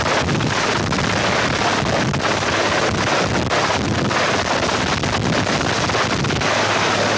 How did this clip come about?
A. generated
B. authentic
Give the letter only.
B